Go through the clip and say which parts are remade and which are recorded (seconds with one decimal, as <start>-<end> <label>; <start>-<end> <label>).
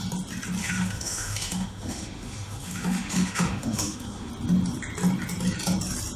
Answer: 0.0-0.6 recorded; 0.6-4.3 remade; 4.3-6.2 recorded